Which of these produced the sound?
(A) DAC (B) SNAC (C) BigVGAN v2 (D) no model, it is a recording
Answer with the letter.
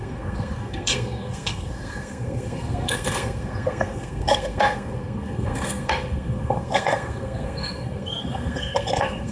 B